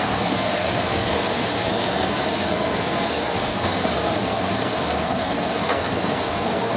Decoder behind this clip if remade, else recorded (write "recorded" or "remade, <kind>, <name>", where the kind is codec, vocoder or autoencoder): remade, codec, SNAC